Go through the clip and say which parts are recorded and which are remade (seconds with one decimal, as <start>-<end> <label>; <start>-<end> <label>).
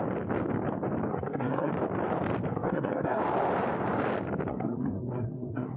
0.0-1.1 recorded; 1.1-1.7 remade; 1.7-2.5 recorded; 2.5-3.2 remade; 3.2-4.5 recorded; 4.5-5.8 remade